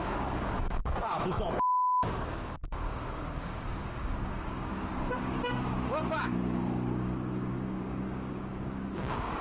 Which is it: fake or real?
fake